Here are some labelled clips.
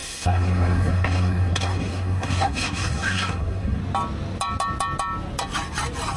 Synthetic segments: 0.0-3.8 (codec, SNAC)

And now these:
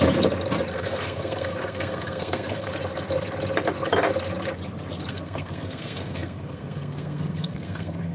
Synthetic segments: 0.7-2.7 (codec, SNAC); 5.1-8.1

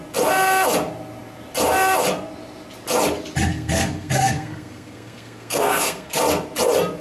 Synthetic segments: 3.5-6.2 (codec, SNAC)

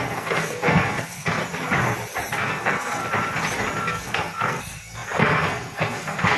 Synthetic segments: 0.0-1.4 (codec, SNAC); 2.3-3.0; 3.8-6.4

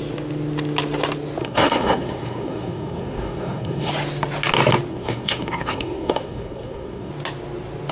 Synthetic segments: 1.4-3.9 (codec, SNAC); 4.9-7.1